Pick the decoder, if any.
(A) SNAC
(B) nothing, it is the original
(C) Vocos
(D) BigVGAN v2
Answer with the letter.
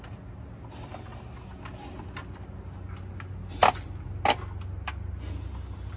B